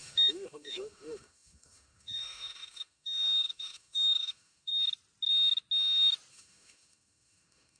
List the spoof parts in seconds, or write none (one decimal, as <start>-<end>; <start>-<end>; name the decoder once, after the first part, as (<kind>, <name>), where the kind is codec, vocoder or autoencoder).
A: 0.0-4.7 (autoencoder, DAC-VAE); 6.3-7.8